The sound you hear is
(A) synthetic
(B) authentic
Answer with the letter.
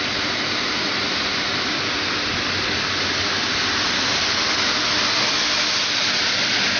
B